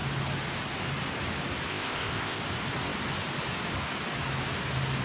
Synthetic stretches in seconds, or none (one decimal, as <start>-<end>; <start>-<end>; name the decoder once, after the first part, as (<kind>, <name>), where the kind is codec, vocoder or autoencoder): 1.7-2.4 (codec, ZipCodec)